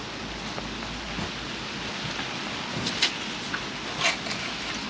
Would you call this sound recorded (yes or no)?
yes